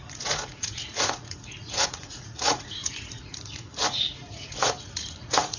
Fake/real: fake